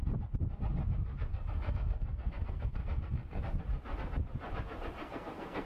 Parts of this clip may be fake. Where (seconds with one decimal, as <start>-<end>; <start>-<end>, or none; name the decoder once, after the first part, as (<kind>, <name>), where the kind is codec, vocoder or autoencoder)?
1.3-3.6 (codec, SNAC); 5.0-5.7